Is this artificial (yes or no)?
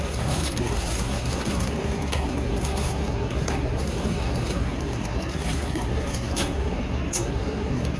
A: yes